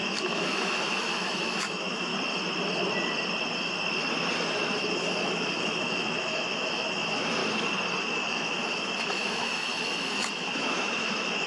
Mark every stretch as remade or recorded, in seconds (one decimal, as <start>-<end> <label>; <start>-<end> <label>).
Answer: 0.0-2.1 remade; 2.1-4.9 recorded; 4.9-7.4 remade; 7.4-8.0 recorded; 8.0-11.5 remade